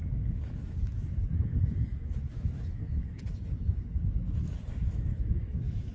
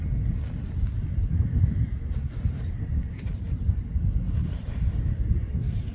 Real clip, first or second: second